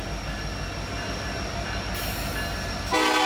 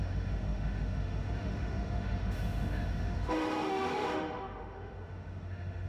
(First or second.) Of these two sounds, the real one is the first